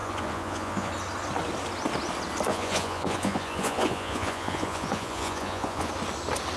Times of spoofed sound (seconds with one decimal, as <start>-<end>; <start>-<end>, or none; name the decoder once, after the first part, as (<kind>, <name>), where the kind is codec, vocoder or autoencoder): 0.0-0.9 (vocoder, Vocos); 2.5-5.9